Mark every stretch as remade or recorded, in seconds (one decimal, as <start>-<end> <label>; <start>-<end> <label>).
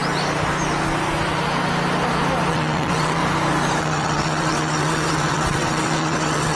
0.0-2.5 recorded; 2.5-3.2 remade; 3.2-3.8 recorded; 3.8-6.5 remade